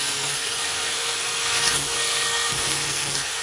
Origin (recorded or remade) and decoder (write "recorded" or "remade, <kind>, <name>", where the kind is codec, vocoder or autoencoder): remade, codec, SNAC